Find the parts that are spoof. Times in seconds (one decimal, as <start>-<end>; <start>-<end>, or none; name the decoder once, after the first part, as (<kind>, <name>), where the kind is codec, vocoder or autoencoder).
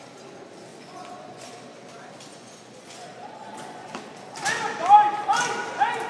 0.7-1.5 (vocoder, Vocos); 2.3-3.9